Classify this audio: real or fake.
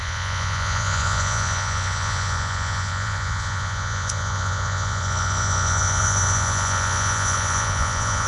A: fake